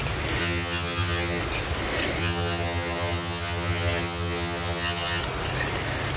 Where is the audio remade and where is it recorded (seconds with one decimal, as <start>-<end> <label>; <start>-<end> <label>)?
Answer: 0.0-0.4 recorded; 0.4-1.4 remade; 1.4-2.2 recorded; 2.2-5.2 remade; 5.2-6.2 recorded